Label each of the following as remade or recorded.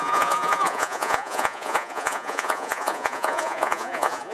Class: remade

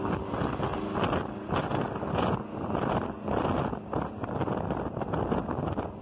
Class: recorded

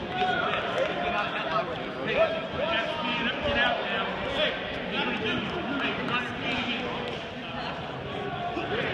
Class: recorded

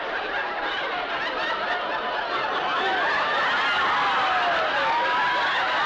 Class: recorded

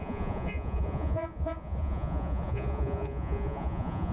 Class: remade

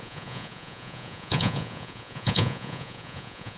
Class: remade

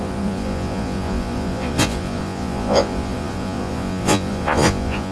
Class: remade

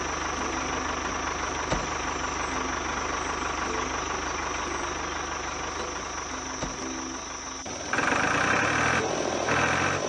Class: recorded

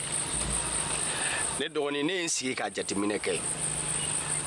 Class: recorded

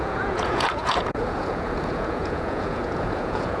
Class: remade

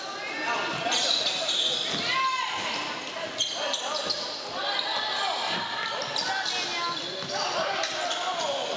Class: recorded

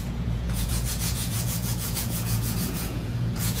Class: remade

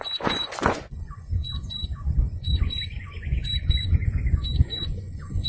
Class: remade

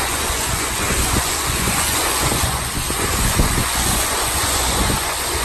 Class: remade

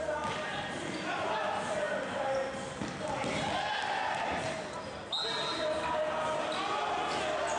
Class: recorded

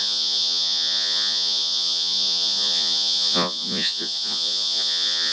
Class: remade